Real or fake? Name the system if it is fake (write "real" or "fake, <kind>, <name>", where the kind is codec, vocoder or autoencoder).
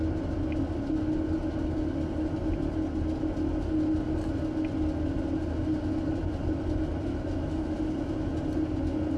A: real